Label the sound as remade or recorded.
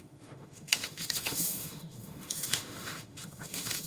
remade